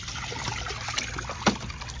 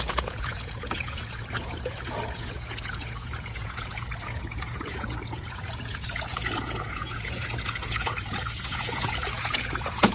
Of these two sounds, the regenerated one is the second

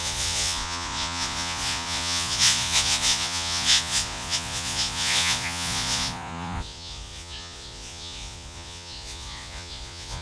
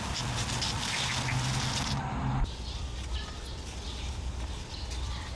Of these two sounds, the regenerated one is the first